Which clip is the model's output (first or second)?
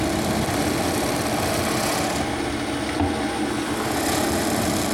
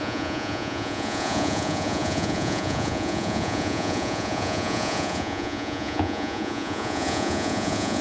second